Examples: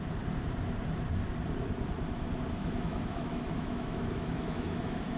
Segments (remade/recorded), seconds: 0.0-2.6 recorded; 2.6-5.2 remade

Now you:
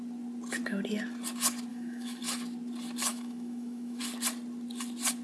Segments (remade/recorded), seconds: 0.0-1.7 recorded; 1.7-2.2 remade; 2.2-3.1 recorded; 3.1-4.0 remade; 4.0-5.2 recorded

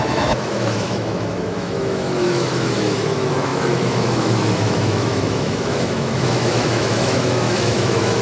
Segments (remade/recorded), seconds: 0.0-8.2 remade

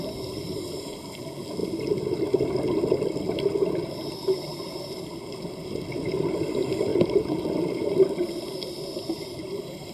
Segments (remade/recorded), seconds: 0.0-9.9 recorded